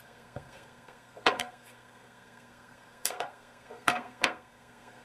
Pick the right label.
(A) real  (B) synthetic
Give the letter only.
B